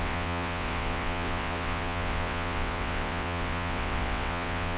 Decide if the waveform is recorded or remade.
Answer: remade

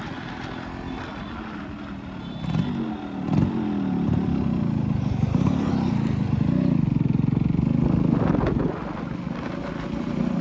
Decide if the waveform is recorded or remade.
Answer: recorded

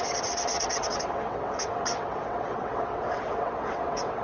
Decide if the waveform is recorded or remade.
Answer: remade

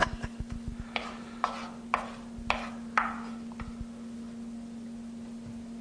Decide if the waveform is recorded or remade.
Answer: recorded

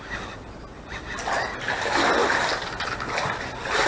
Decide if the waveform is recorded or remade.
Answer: recorded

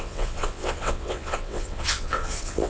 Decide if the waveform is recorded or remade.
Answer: remade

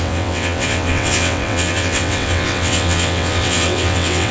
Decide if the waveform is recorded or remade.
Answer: remade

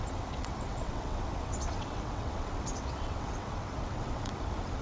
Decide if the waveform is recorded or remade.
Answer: remade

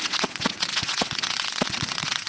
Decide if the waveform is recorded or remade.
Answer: remade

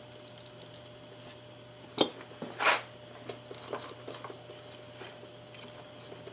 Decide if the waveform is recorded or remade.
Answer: recorded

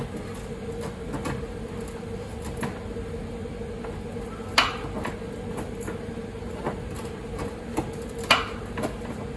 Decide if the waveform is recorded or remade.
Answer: recorded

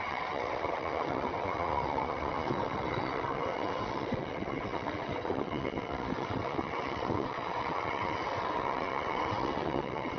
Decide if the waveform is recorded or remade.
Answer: remade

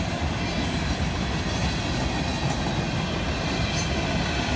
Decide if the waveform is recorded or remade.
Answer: recorded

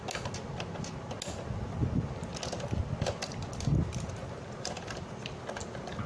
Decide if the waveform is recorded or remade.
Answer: recorded